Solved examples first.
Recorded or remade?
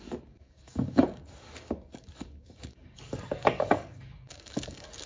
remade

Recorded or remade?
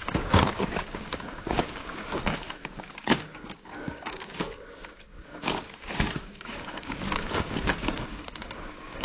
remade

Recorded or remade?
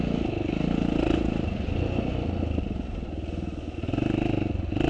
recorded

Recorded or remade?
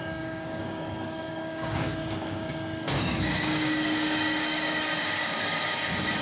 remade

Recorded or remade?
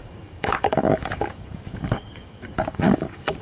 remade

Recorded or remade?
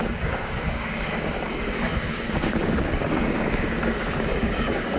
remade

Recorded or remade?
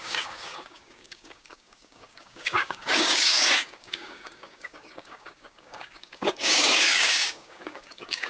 remade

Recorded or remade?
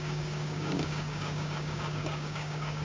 remade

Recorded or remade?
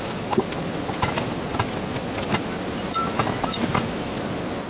recorded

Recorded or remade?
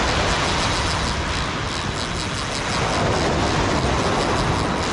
recorded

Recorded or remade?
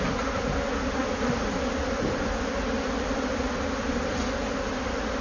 recorded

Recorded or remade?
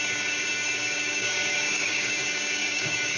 remade